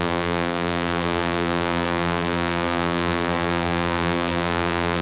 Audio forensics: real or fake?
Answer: fake